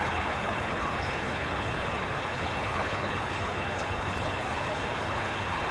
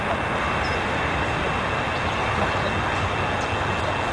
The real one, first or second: second